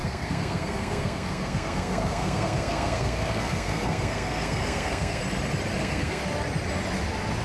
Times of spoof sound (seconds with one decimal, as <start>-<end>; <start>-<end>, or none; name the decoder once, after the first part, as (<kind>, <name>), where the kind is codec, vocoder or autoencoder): 0.0-5.2 (codec, SNAC); 5.8-6.2